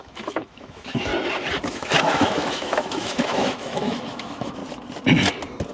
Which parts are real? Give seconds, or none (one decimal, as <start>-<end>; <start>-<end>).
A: 1.1-1.7; 4.6-5.7